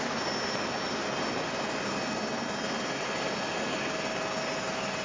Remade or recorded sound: recorded